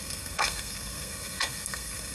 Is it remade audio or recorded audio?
remade